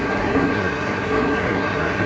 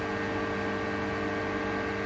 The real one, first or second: second